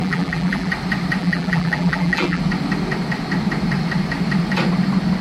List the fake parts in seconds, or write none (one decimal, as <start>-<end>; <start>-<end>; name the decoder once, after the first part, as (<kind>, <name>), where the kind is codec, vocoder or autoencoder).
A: 0.0-0.7 (vocoder, BigVGAN v2); 1.2-2.4